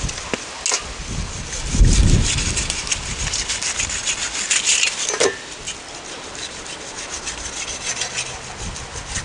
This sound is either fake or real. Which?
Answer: real